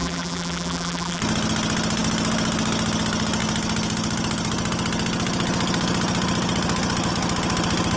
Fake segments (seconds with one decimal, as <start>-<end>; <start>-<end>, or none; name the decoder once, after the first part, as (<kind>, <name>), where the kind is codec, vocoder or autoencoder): 0.0-1.2 (vocoder, BigVGAN v2)